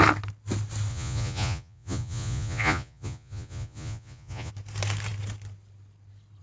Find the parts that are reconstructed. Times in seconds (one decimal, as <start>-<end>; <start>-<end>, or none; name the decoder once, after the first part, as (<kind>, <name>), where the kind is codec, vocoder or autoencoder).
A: 0.9-4.5 (vocoder, Vocos)